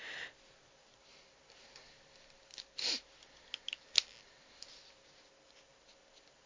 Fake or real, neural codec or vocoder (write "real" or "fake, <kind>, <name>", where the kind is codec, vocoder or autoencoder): real